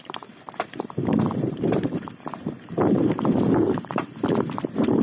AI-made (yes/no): yes